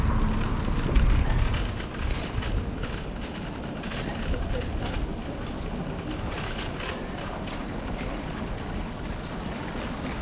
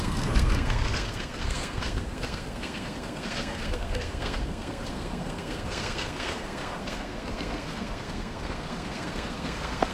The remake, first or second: second